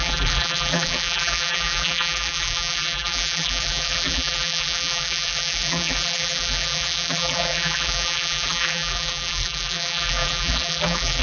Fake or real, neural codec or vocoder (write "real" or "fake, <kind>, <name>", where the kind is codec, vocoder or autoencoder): fake, vocoder, BigVGAN v2